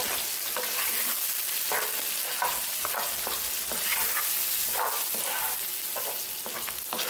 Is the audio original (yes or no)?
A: yes